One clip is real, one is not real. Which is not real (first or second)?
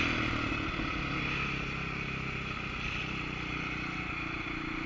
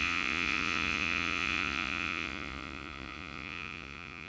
second